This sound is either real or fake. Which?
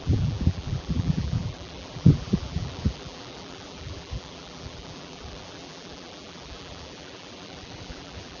fake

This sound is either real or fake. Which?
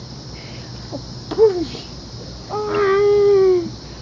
real